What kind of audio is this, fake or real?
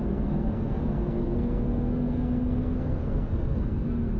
fake